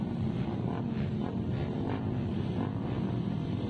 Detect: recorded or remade recorded